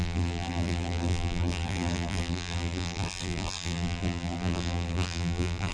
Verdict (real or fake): fake